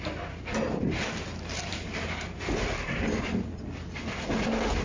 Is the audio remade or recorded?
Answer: recorded